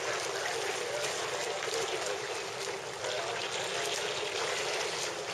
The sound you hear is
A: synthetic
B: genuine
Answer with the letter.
B